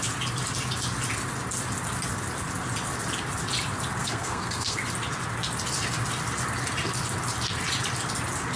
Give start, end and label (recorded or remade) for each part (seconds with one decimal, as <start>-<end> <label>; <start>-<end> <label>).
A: 0.0-4.0 recorded; 4.0-4.8 remade; 4.8-8.6 recorded